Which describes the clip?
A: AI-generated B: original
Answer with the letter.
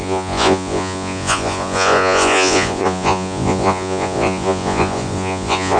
A